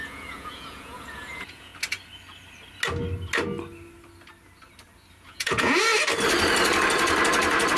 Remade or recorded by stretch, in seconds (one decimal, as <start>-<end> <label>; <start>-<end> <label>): 0.0-1.7 remade; 1.7-5.1 recorded; 5.1-5.9 remade; 5.9-7.8 recorded